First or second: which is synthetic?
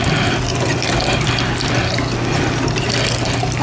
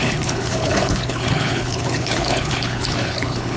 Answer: second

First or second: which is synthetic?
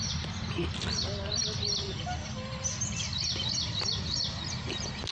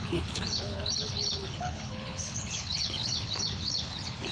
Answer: second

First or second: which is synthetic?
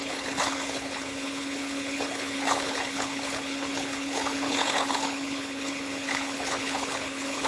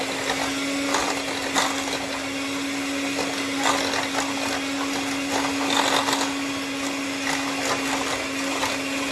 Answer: first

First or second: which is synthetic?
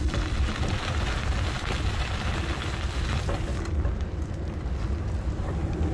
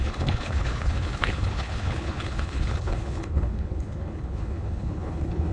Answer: second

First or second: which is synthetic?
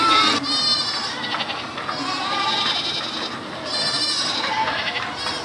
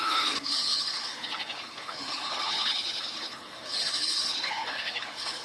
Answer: second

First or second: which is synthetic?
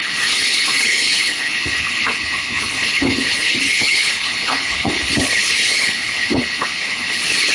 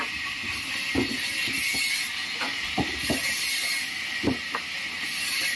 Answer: first